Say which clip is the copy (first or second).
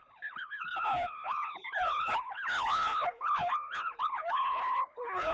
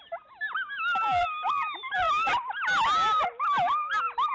first